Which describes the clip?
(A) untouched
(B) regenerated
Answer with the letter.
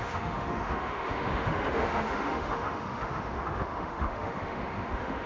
B